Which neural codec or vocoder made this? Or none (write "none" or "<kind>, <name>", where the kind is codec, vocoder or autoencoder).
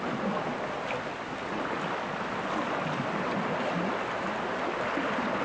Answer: none